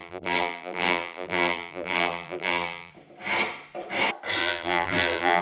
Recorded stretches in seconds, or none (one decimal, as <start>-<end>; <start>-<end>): 2.9-4.4